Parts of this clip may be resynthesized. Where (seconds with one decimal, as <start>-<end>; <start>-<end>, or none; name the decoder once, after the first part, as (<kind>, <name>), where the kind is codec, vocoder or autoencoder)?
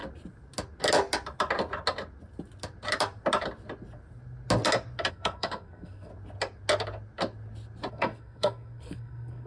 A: 5.1-6.1 (codec, SNAC); 7.9-9.5